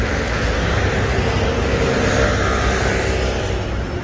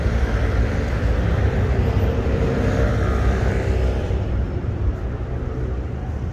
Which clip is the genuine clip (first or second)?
first